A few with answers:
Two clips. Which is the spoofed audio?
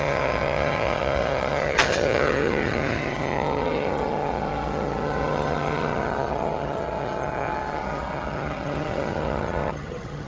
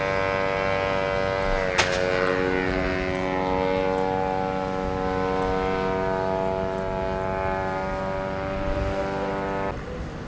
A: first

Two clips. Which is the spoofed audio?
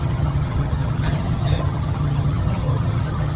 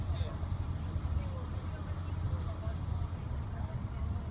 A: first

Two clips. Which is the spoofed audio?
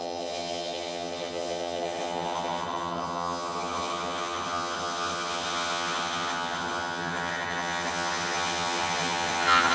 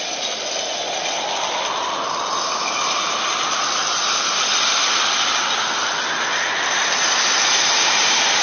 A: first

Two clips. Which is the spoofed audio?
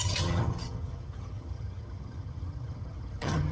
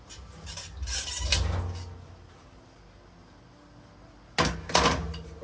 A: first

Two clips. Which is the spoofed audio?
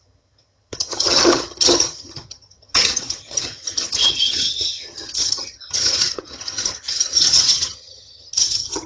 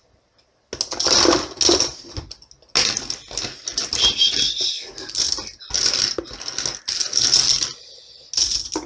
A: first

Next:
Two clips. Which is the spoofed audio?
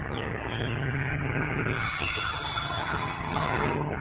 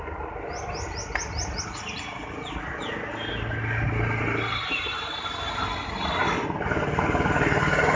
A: first